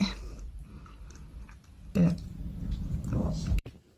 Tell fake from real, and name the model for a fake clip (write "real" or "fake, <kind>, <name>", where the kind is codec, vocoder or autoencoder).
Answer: fake, vocoder, BigVGAN v2